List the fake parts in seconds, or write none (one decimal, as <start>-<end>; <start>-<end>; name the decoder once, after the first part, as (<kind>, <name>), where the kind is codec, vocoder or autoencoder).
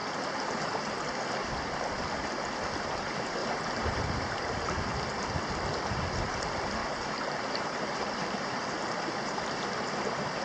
3.4-4.0 (vocoder, BigVGAN v2); 6.8-10.4